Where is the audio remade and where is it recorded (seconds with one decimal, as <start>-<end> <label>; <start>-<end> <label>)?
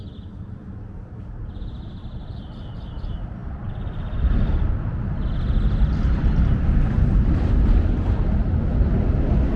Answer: 0.0-3.4 remade; 3.4-5.8 recorded; 5.8-9.6 remade